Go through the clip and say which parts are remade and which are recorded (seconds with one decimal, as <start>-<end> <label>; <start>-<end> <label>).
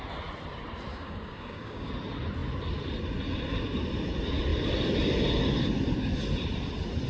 0.0-0.9 recorded; 0.9-1.9 remade; 1.9-7.1 recorded